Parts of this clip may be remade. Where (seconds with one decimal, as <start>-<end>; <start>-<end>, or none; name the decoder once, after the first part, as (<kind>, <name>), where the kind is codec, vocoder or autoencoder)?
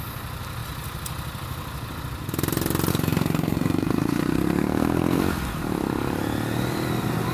2.9-5.2 (codec, SNAC)